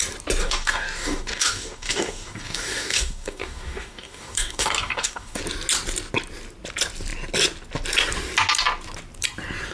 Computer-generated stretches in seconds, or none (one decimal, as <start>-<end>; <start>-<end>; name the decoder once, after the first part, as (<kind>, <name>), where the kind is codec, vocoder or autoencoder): 0.4-5.4 (codec, DAC)